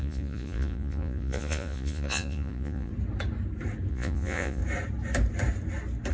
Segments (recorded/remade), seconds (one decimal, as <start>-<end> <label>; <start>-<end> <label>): 0.0-2.9 remade; 2.9-3.9 recorded; 3.9-4.6 remade; 4.6-6.1 recorded